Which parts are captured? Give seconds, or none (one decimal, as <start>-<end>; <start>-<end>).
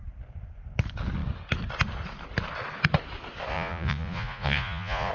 0.0-3.5